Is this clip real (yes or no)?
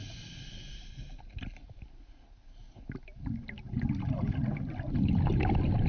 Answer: yes